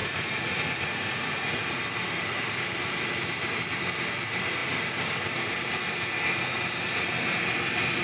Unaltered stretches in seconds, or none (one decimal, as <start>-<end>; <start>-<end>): 1.8-8.0